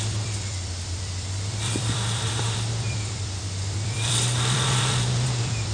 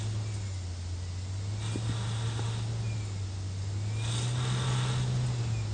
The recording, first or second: second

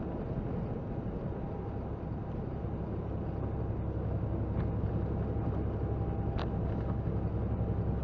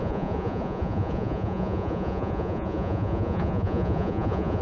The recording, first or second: first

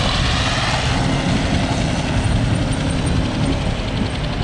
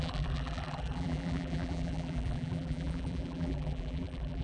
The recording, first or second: first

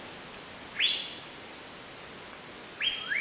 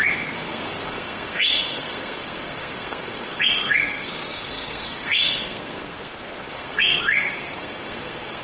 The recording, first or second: first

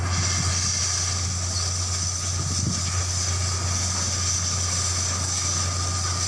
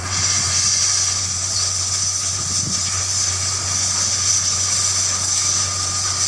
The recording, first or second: first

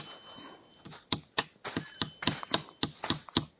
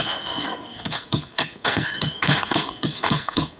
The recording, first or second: first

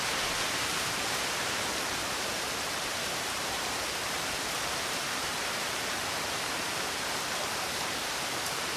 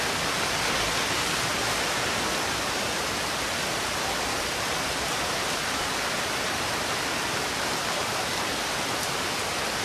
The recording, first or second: second